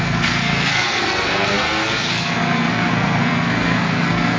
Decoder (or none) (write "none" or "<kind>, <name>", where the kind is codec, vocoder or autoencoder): codec, SNAC